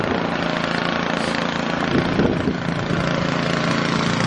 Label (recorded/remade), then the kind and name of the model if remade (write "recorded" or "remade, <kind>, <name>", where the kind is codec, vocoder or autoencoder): recorded